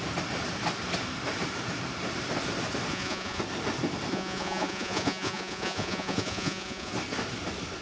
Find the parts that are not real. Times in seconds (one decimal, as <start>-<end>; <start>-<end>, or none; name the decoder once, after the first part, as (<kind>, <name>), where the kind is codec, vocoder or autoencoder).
2.9-3.4 (vocoder, Vocos); 4.1-6.9